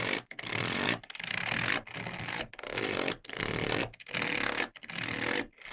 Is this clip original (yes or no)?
yes